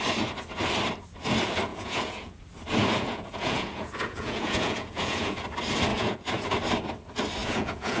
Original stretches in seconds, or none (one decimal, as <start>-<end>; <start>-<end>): 0.0-1.7; 2.4-2.8; 5.4-5.9; 6.5-7.4